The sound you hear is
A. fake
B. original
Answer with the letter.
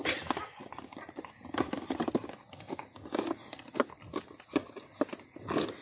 B